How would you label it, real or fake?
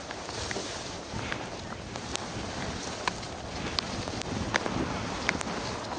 real